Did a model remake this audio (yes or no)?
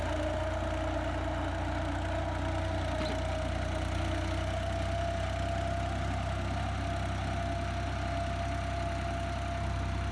no